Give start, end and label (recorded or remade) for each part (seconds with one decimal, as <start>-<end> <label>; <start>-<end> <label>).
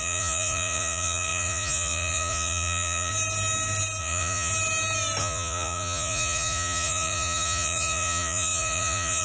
0.0-3.1 remade; 3.1-4.0 recorded; 4.0-4.5 remade; 4.5-5.2 recorded; 5.2-9.2 remade